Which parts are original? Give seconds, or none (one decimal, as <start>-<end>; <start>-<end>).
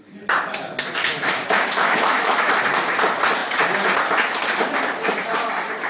0.0-1.0; 2.5-5.9